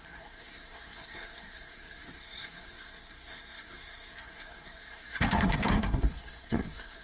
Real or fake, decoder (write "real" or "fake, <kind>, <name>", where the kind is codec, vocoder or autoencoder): fake, codec, SNAC